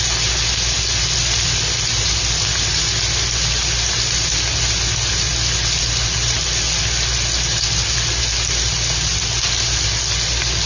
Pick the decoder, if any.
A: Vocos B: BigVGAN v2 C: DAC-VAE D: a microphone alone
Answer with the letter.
D